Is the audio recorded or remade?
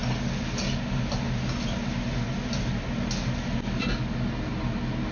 recorded